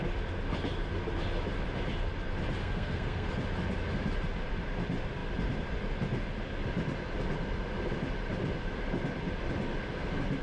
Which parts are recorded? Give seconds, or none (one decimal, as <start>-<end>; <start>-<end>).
0.0-2.6; 3.3-10.4